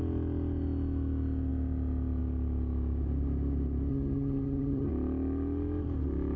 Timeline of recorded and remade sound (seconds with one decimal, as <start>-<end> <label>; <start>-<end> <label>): 0.0-3.9 recorded; 3.9-4.9 remade; 4.9-6.4 recorded